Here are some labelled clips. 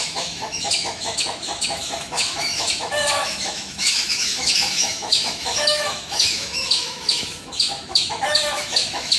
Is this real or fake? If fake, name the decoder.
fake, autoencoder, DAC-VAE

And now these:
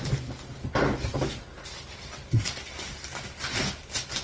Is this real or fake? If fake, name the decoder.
real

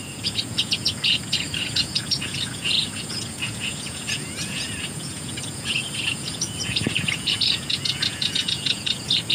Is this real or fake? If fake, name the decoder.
fake, vocoder, Vocos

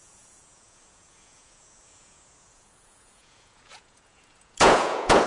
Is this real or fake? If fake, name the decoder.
fake, vocoder, Vocos